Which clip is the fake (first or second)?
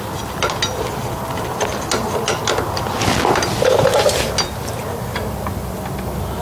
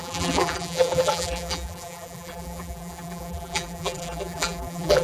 second